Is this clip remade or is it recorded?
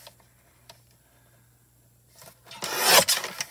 recorded